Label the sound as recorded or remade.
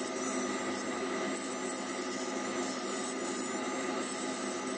recorded